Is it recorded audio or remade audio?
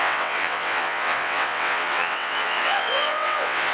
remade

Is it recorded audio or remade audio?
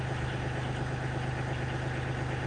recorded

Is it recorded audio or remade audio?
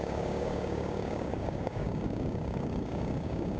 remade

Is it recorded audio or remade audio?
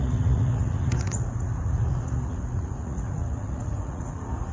remade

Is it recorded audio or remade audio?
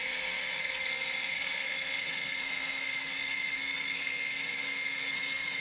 remade